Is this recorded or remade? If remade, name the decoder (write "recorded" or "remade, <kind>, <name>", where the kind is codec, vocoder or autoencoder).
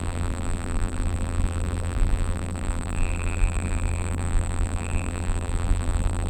remade, vocoder, BigVGAN v2